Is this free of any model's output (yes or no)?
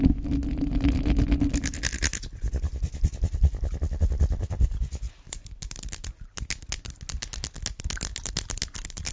yes